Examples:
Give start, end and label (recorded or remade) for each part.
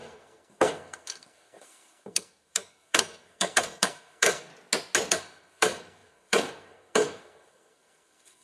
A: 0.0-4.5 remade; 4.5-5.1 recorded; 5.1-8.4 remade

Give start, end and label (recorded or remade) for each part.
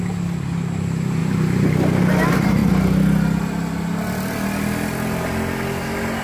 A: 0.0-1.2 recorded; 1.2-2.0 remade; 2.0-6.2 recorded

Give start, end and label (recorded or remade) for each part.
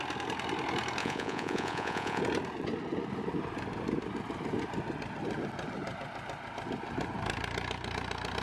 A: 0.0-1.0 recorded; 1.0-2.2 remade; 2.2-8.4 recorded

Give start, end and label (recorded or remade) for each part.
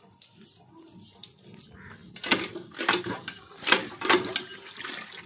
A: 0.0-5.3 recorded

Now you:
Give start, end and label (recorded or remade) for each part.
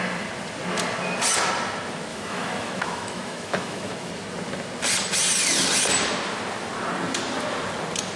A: 0.0-2.1 recorded; 2.1-4.1 remade; 4.1-8.2 recorded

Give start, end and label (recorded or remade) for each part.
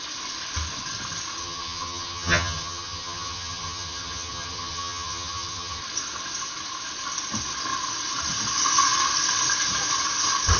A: 0.0-1.4 recorded; 1.4-5.8 remade; 5.8-10.6 recorded